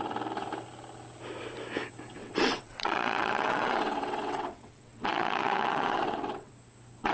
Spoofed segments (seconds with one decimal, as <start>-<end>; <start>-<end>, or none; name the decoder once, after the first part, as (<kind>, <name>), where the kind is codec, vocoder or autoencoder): 2.2-6.5 (vocoder, WaveNeXt)